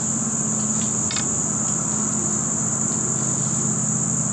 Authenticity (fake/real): real